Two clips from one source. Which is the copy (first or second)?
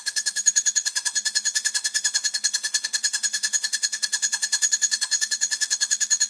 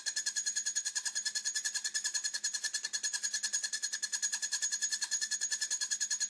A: first